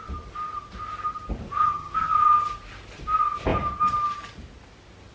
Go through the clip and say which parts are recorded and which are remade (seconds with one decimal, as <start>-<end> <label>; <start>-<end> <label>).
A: 0.0-1.6 recorded; 1.6-2.4 remade; 2.4-5.1 recorded